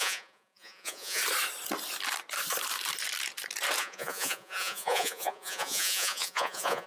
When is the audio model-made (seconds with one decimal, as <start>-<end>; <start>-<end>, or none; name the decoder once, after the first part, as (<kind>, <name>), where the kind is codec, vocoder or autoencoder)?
0.0-1.2 (vocoder, Vocos); 3.8-6.9